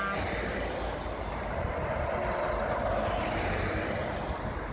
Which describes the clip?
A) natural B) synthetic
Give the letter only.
A